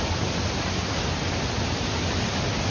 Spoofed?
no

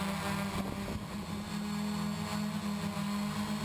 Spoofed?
no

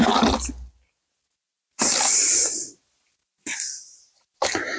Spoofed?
no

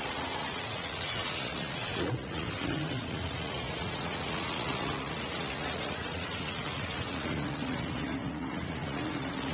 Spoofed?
yes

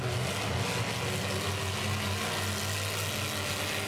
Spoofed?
no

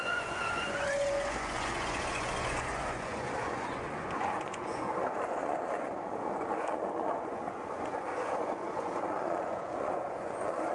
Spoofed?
yes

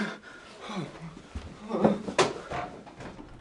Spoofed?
no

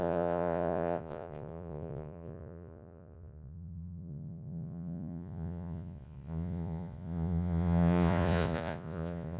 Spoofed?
yes